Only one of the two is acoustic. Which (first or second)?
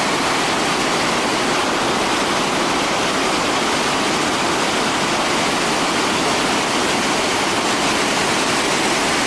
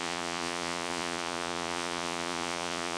first